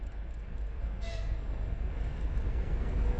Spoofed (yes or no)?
yes